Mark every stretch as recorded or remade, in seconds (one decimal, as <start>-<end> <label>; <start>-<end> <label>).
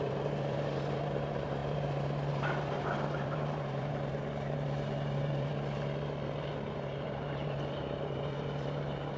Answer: 0.0-5.5 remade; 5.5-6.5 recorded; 6.5-9.2 remade